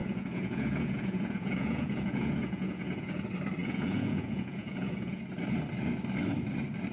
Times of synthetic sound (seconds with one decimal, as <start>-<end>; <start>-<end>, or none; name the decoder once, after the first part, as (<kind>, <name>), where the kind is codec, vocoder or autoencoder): 0.0-3.2 (vocoder, Vocos); 3.6-5.2